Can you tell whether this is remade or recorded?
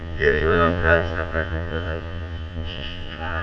remade